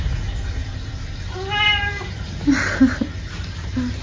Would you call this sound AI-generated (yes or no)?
no